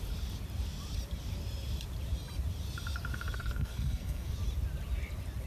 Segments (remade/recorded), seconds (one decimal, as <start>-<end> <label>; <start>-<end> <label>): 0.0-3.1 recorded; 3.1-4.3 remade; 4.3-5.5 recorded